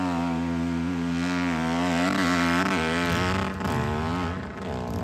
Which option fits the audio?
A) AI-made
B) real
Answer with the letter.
B